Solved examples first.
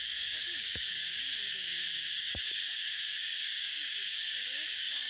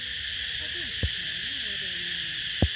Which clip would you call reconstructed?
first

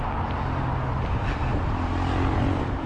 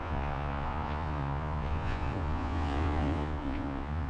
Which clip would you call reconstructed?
second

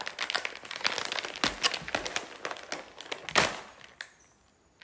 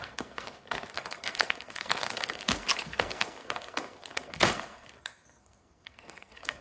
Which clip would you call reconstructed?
second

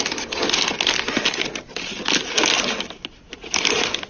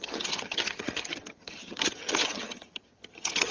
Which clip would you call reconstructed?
second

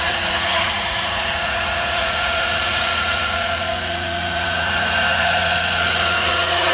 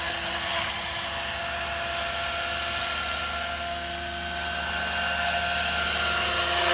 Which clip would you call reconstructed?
first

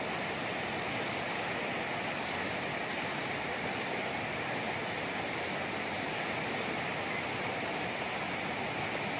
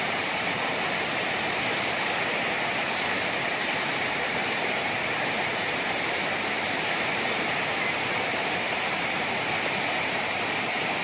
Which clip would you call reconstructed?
second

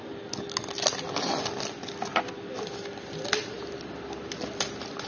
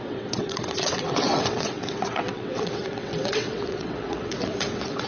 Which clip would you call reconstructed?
second